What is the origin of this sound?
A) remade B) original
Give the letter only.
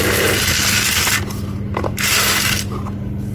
B